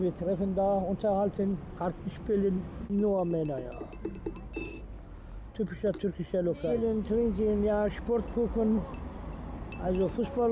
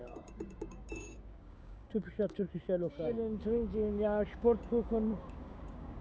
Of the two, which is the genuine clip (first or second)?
first